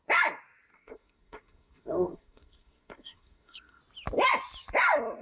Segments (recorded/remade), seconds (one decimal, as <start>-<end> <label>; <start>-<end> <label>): 0.0-0.7 recorded; 0.7-3.8 remade; 3.8-5.2 recorded